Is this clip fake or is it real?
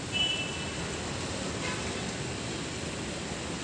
real